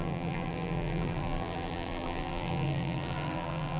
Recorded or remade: remade